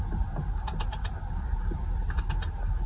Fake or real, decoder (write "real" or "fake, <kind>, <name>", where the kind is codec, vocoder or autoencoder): real